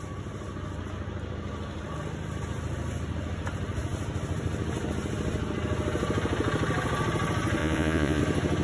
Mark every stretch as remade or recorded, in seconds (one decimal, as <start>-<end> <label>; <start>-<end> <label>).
0.0-7.6 recorded; 7.6-8.2 remade; 8.2-8.6 recorded